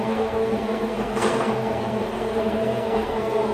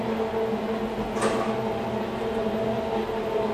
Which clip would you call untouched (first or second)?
second